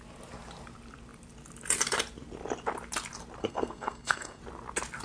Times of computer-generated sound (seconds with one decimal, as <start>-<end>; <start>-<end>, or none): 3.4-4.4